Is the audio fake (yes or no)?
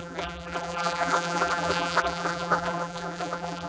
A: yes